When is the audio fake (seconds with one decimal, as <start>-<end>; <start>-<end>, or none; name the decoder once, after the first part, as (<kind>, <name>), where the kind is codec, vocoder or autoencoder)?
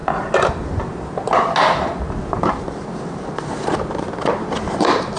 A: none